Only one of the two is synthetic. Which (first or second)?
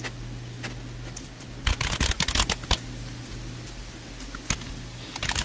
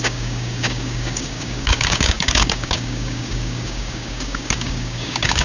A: second